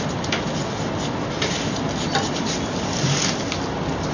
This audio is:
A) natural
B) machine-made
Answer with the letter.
A